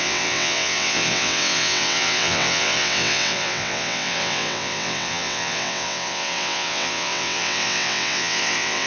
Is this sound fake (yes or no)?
yes